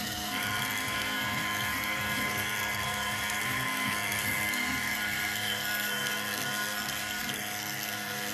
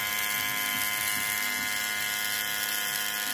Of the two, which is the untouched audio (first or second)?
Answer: second